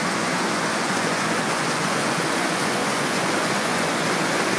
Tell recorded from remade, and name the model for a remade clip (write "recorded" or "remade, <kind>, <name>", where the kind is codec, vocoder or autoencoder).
remade, vocoder, Vocos